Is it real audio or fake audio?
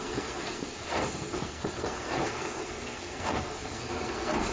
fake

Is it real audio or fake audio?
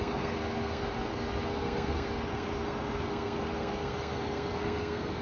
fake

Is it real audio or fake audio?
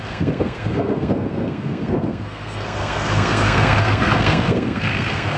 fake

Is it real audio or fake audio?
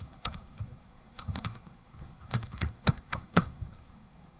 fake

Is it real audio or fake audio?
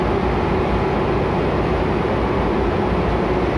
real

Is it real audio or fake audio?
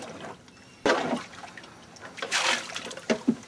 real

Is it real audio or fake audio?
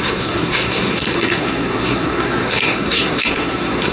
fake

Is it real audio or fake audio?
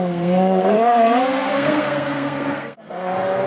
fake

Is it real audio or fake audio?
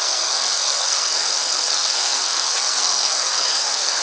fake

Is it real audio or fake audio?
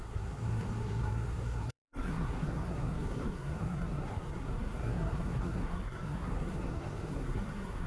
fake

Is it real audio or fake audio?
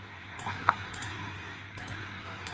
fake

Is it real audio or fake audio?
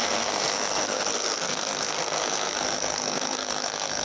fake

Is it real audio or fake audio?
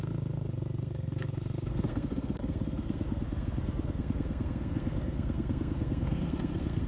fake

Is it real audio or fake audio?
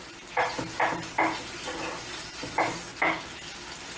real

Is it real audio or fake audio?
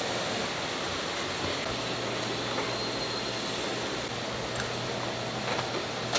real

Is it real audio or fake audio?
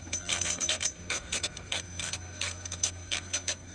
fake